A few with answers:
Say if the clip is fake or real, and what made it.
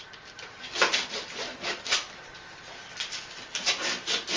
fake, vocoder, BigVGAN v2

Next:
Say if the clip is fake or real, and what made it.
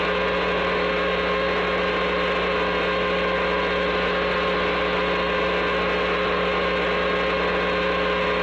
real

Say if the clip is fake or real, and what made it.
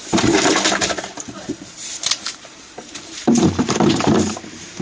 fake, vocoder, BigVGAN v2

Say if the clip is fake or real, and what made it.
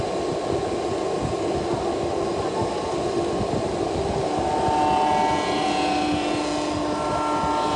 real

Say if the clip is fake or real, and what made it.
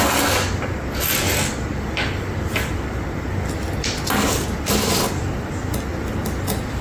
real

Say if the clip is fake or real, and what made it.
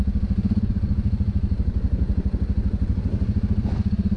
fake, vocoder, BigVGAN v2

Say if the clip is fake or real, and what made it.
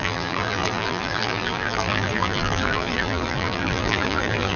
fake, vocoder, BigVGAN v2